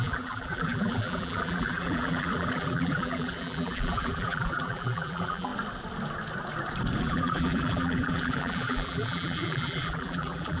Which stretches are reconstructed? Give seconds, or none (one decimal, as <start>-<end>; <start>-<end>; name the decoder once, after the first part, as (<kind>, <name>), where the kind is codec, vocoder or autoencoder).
0.0-5.5 (vocoder, BigVGAN v2); 7.0-10.6